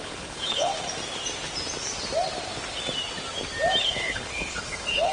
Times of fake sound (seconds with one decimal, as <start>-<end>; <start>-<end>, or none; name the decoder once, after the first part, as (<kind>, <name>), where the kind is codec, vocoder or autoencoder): 0.0-0.7 (codec, HILCodec); 3.8-5.1